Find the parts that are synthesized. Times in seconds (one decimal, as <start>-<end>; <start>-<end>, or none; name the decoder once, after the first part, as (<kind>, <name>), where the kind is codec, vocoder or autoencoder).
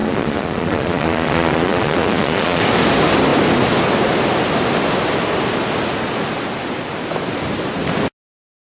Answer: 0.0-2.6 (vocoder, Vocos)